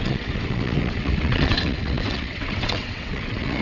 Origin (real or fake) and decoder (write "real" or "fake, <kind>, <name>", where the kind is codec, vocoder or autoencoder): fake, vocoder, WaveNeXt